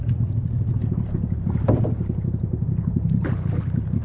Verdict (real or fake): real